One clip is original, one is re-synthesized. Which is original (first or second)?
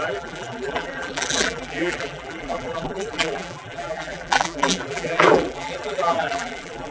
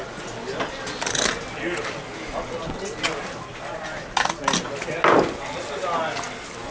second